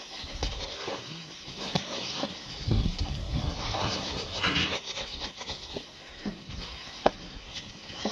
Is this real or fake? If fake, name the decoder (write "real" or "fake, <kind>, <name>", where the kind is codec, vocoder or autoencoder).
fake, codec, SNAC